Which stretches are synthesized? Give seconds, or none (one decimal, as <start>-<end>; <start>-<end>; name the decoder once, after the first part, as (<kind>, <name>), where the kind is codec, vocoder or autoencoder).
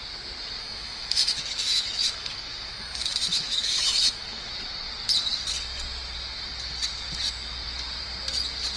0.6-4.5 (autoencoder, DAC-VAE)